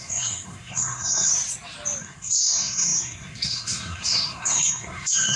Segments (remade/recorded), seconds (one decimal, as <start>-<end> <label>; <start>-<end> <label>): 0.0-1.3 remade; 1.3-2.0 recorded; 2.0-5.4 remade